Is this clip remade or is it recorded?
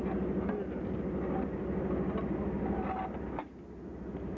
recorded